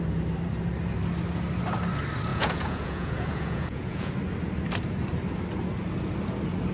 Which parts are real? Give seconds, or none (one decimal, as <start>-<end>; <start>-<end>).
0.0-2.3; 4.1-6.7